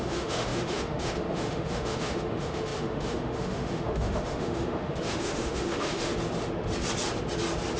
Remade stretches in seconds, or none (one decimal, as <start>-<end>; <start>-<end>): 0.0-6.1